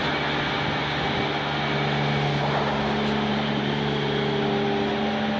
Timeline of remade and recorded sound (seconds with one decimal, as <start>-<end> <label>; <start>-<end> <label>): 0.0-3.3 recorded; 3.3-3.8 remade; 3.8-5.4 recorded